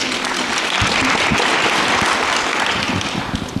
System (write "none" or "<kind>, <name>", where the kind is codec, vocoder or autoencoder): none